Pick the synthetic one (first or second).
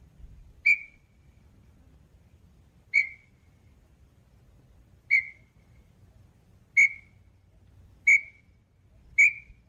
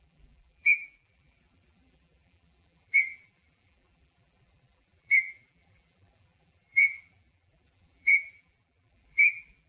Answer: second